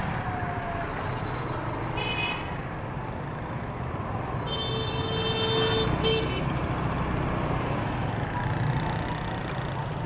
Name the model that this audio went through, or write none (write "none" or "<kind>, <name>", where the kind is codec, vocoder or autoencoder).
none